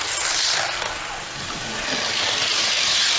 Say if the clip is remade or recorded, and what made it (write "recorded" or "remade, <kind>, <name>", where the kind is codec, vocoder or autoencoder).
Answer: recorded